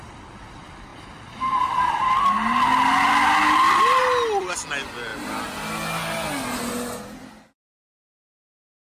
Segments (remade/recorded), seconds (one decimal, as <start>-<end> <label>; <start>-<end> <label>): 0.0-9.0 recorded